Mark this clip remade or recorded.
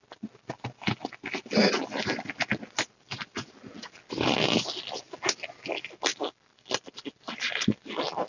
recorded